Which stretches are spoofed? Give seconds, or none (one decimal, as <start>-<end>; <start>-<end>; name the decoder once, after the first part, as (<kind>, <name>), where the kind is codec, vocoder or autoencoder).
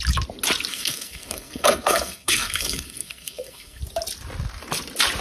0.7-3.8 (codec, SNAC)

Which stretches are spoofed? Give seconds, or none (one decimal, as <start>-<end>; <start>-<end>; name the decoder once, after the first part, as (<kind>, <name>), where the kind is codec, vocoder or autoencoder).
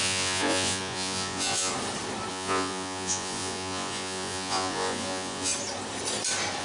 0.0-1.7 (vocoder, Vocos); 2.3-5.5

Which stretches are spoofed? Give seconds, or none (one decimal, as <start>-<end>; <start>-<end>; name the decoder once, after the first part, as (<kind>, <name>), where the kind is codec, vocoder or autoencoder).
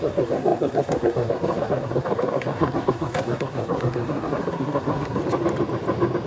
0.0-5.2 (codec, SNAC)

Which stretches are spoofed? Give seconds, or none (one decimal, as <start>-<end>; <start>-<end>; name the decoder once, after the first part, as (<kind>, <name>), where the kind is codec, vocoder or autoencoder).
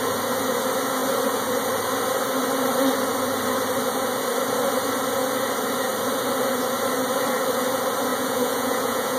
8.1-9.2 (vocoder, Vocos)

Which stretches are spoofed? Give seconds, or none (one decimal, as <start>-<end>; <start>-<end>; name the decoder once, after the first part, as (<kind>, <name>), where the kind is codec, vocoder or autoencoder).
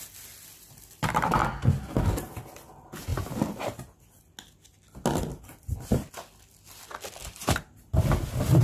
7.2-7.8 (vocoder, BigVGAN v2)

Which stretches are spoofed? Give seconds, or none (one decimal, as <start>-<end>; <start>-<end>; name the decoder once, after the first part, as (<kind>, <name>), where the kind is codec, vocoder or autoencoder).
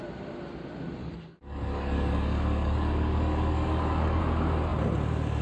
1.0-4.2 (codec, DAC)